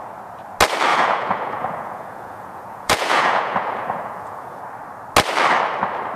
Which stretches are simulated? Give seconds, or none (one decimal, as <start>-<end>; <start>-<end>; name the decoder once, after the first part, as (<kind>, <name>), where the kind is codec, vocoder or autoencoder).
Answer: 0.9-4.6 (vocoder, Vocos)